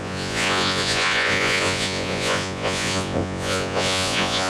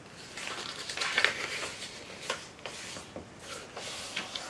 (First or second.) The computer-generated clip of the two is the first